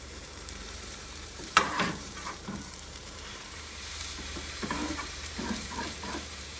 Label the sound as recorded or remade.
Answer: remade